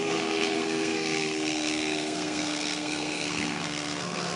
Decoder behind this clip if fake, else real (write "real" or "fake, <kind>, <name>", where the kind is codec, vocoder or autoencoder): fake, codec, SNAC